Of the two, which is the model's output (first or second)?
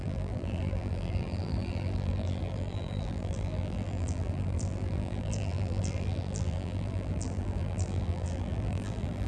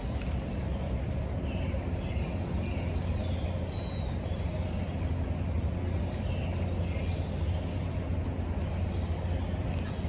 first